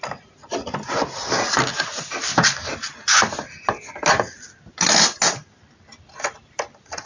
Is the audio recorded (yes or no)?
yes